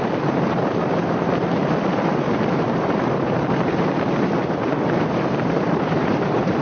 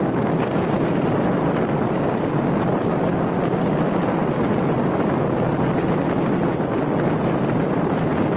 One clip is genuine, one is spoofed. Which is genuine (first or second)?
second